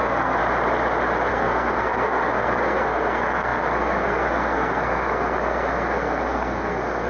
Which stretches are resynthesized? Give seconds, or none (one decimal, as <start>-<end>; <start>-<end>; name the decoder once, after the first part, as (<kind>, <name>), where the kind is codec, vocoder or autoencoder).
0.0-0.4 (codec, SNAC); 1.3-7.1